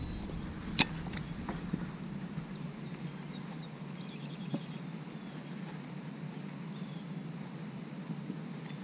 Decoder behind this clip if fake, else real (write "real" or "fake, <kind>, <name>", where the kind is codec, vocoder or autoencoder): real